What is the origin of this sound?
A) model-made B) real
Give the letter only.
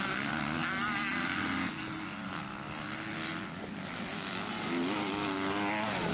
B